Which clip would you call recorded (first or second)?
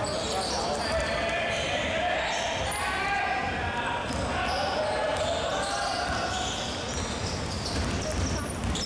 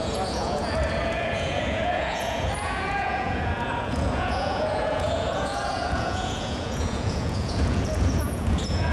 first